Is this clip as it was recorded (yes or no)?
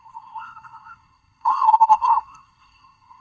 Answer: no